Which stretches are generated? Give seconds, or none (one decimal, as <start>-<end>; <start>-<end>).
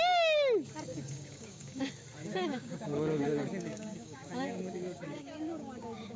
0.9-1.8; 2.2-6.2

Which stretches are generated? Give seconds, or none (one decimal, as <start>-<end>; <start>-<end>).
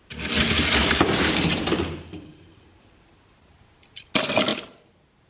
0.8-4.0; 4.5-5.3